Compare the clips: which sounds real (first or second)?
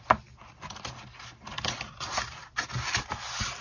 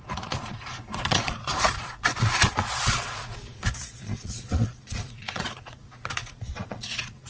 first